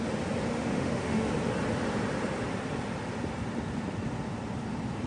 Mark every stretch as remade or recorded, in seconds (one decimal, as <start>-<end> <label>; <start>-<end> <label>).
0.0-0.5 recorded; 0.5-1.3 remade; 1.3-5.1 recorded

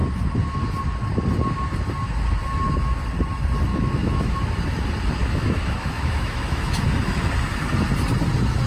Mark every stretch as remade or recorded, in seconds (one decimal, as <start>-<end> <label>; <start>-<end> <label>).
0.0-3.7 recorded; 3.7-4.4 remade; 4.4-5.2 recorded; 5.2-7.3 remade; 7.3-8.7 recorded

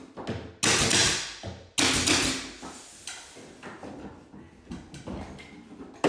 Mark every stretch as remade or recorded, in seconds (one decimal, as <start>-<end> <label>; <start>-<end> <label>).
0.0-6.1 recorded

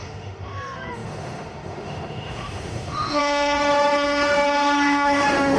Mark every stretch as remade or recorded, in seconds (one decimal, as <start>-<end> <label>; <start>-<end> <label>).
0.0-5.6 remade

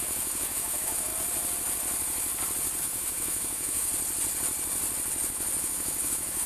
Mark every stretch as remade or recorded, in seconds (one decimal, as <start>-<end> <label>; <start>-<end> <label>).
0.0-1.1 remade; 1.1-2.8 recorded; 2.8-3.9 remade; 3.9-5.6 recorded; 5.6-6.5 remade

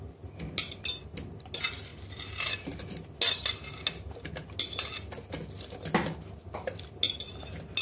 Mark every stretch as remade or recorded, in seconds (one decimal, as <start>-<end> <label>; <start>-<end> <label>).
0.0-7.8 recorded

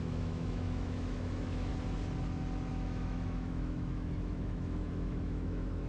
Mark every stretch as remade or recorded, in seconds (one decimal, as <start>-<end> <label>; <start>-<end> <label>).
0.0-1.7 remade; 1.7-2.7 recorded; 2.7-5.9 remade

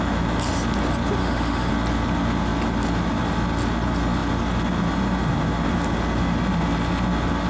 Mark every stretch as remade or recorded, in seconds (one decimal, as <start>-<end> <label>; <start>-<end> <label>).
0.0-1.2 recorded; 1.2-1.7 remade; 1.7-7.5 recorded